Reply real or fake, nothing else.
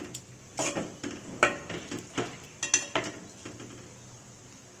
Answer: real